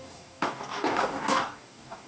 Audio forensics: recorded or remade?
remade